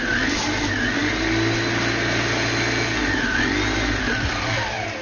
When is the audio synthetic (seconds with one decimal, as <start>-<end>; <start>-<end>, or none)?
none